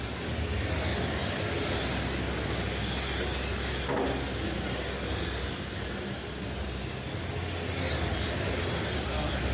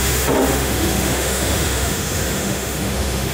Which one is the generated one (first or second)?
second